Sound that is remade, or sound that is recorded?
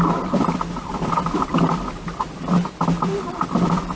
remade